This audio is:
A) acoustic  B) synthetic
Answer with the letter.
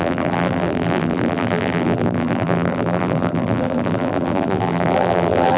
B